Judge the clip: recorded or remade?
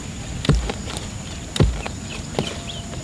recorded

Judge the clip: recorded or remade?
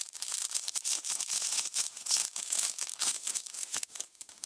remade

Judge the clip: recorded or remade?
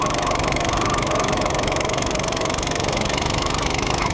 remade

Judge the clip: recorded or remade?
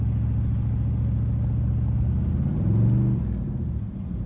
recorded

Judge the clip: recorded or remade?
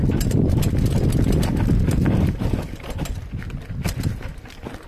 recorded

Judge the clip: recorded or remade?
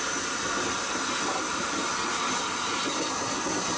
recorded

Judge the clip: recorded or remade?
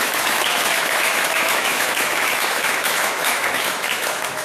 remade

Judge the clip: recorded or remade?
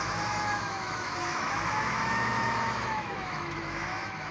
remade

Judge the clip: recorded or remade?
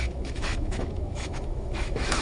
remade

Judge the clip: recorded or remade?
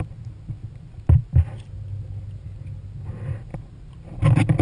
recorded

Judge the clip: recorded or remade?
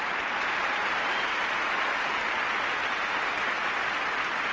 recorded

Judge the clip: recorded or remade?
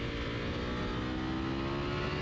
recorded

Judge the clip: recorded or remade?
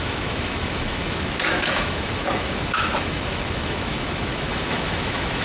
remade